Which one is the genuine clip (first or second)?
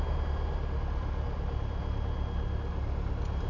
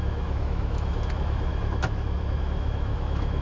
first